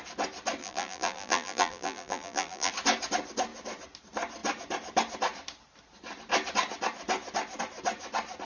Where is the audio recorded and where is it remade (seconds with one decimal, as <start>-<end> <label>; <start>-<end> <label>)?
0.0-0.6 recorded; 0.6-2.7 remade; 2.7-8.4 recorded